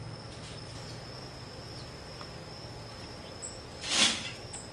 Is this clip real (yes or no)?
yes